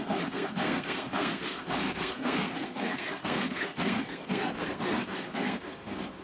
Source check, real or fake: fake